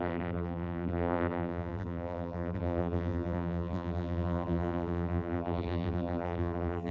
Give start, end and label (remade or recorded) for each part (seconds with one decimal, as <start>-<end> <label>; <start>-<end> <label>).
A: 0.0-6.9 remade